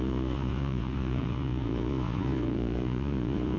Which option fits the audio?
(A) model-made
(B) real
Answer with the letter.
A